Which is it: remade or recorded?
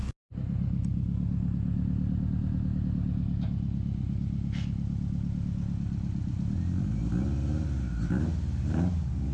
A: recorded